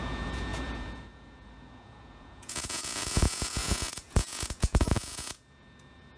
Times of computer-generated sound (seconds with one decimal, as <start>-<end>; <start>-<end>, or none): 0.0-6.2

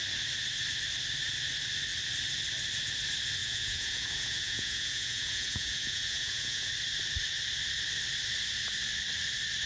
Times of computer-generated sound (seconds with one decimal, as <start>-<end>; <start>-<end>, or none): 3.4-6.7

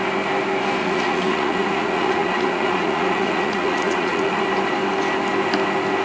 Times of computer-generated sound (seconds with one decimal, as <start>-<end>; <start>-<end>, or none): 0.8-4.4